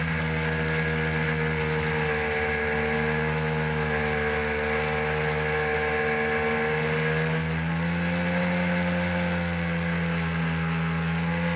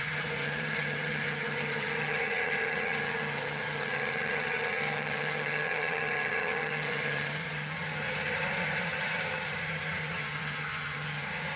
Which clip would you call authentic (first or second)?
first